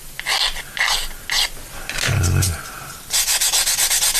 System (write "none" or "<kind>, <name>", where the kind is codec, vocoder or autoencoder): none